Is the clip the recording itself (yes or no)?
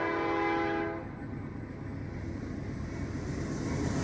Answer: yes